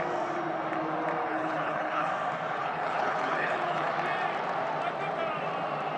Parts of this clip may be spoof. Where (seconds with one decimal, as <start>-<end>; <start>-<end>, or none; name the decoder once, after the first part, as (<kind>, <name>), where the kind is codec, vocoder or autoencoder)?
1.2-2.1 (codec, HILCodec); 2.6-3.9